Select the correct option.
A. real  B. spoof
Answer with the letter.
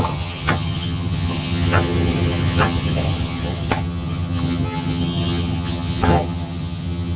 B